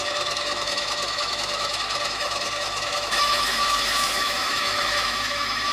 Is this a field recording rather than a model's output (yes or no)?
no